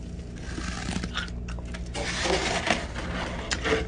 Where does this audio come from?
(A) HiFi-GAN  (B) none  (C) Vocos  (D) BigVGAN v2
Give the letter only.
B